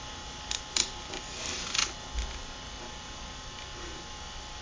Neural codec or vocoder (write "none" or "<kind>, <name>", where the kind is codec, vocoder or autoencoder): none